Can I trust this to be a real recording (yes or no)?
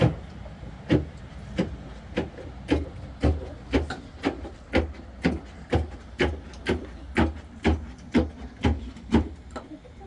yes